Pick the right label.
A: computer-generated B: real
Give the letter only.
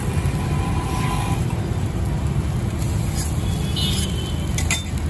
B